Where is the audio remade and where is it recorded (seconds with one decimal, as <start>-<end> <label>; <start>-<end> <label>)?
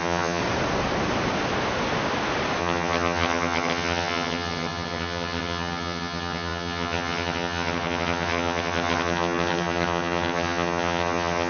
0.0-0.4 remade; 0.4-2.6 recorded; 2.6-11.5 remade